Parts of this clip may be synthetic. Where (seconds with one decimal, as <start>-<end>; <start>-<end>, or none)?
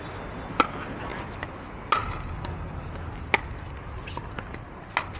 none